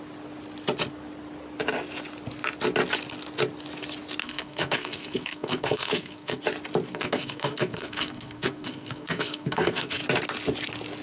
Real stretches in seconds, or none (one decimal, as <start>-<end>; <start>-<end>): 0.0-4.2; 6.4-6.9; 10.0-11.0